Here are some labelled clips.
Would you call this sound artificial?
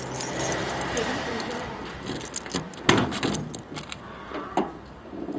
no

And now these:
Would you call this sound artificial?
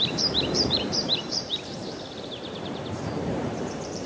yes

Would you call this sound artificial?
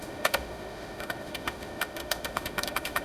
yes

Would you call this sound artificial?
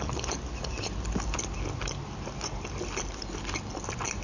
no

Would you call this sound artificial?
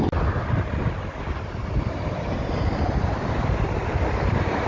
no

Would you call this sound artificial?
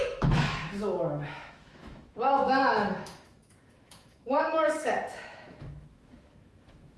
yes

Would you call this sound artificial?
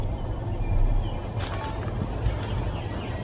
no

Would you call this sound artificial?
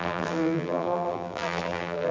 yes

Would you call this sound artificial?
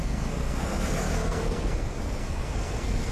yes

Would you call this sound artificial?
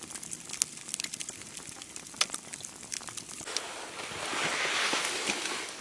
no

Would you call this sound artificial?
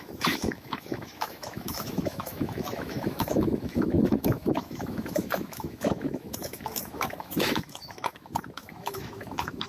yes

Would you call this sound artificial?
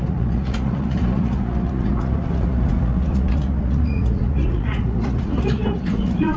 yes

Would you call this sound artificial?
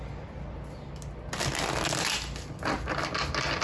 no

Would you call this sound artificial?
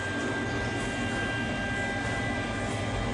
no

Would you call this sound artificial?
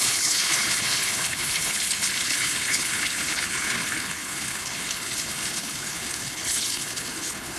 yes